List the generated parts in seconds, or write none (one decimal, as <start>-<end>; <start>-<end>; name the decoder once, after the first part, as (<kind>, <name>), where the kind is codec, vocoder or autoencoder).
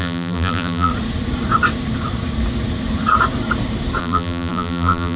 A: 0.0-0.9 (vocoder, BigVGAN v2); 4.0-5.2